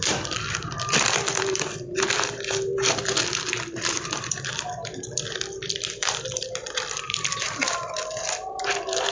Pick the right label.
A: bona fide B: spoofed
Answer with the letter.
B